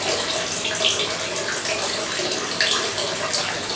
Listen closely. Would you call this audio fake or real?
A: real